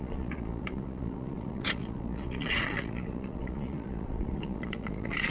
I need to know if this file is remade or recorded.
remade